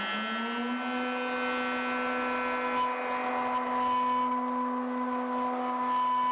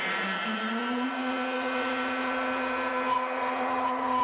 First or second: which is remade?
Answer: second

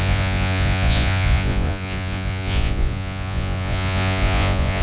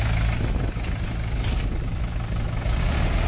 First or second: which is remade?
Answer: first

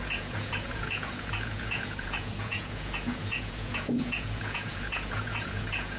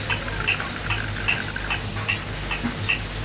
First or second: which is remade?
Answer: first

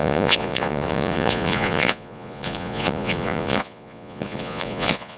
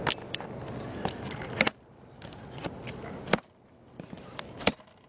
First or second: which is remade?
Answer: first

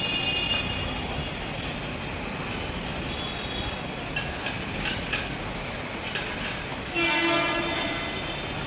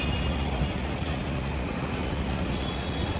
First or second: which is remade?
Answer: second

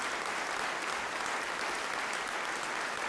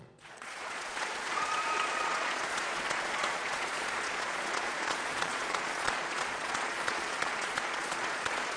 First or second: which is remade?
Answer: second